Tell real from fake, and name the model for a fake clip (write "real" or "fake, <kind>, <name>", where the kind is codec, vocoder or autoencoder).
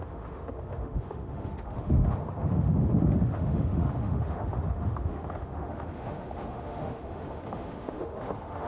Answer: fake, autoencoder, DAC-VAE